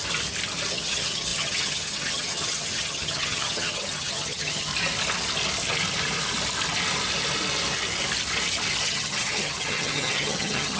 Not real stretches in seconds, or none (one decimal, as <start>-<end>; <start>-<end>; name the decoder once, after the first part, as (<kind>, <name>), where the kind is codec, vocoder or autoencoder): 0.7-4.7 (vocoder, HiFi-GAN); 8.8-10.8